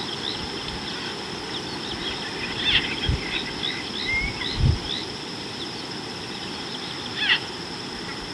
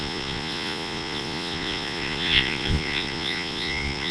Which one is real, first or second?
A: first